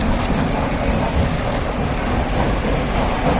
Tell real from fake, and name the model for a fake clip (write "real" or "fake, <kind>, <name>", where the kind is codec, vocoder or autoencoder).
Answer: real